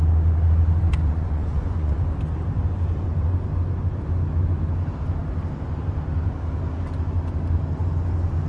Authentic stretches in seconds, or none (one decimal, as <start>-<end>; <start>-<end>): 0.0-1.0; 2.0-8.5